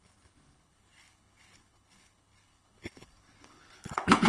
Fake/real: fake